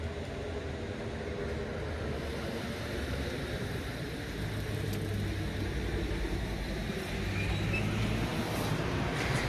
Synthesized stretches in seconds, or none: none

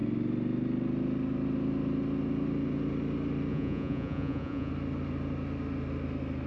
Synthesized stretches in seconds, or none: 3.5-4.7 (vocoder, Vocos)

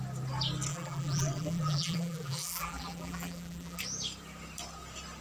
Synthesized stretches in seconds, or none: 0.7-3.8 (vocoder, BigVGAN v2)

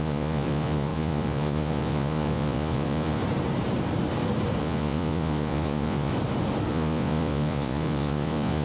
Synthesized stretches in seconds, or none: 0.0-3.2 (vocoder, Vocos); 4.6-6.1; 6.7-8.6